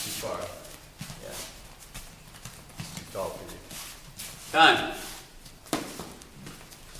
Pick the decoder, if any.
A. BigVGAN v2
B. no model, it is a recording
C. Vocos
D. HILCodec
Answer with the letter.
B